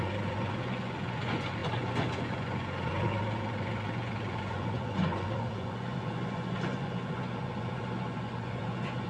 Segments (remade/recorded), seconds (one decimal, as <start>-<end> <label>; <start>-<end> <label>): 0.0-9.1 remade

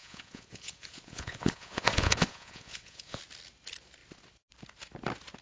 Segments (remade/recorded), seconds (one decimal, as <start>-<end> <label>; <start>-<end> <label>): 0.0-3.2 remade; 3.2-5.4 recorded

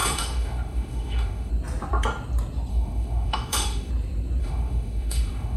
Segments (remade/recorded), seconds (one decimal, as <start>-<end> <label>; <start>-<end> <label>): 0.0-1.5 remade; 1.5-2.7 recorded; 2.7-3.9 remade; 3.9-4.4 recorded; 4.4-5.6 remade

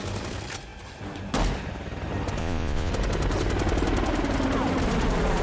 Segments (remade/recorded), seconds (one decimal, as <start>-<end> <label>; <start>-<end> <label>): 0.0-2.4 recorded; 2.4-2.9 remade; 2.9-5.4 recorded